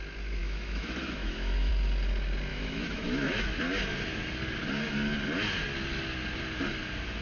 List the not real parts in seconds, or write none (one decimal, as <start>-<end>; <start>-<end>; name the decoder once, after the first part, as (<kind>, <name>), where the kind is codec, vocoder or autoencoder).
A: 0.4-1.7 (autoencoder, DAC-VAE); 2.5-3.6